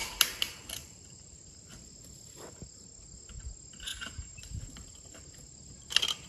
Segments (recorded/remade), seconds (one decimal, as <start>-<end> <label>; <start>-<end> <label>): 0.0-3.9 recorded; 3.9-4.7 remade; 4.7-6.3 recorded